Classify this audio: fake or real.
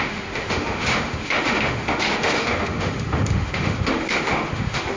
fake